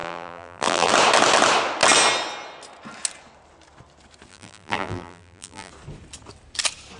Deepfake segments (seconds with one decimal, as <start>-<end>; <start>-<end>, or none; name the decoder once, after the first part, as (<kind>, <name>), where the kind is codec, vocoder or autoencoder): 0.0-0.9 (vocoder, BigVGAN v2); 4.3-5.7